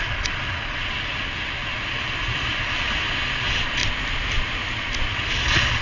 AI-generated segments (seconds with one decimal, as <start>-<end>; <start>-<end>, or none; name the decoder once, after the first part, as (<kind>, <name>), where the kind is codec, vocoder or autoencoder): 0.0-3.8 (vocoder, Vocos); 5.1-5.8